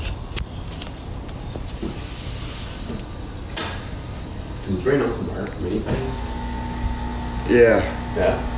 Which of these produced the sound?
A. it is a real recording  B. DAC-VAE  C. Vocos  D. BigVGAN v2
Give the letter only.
A